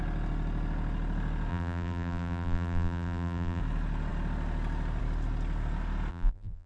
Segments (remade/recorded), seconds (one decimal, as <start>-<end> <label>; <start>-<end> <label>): 0.0-1.5 recorded; 1.5-3.6 remade; 3.6-6.1 recorded; 6.1-6.7 remade